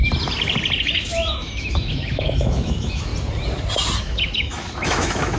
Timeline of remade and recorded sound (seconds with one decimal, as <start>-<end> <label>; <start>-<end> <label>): 0.0-0.8 recorded; 0.8-3.1 remade; 3.1-4.0 recorded; 4.0-5.4 remade